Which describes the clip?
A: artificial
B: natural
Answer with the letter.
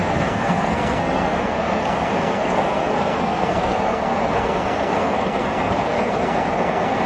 A